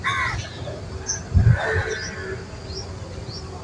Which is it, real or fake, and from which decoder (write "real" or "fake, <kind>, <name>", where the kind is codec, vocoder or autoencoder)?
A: real